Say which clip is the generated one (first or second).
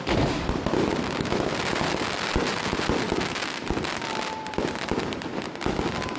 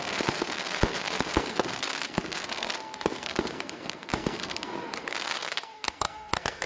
second